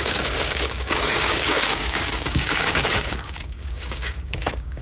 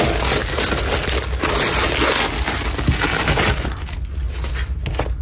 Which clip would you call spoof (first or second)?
first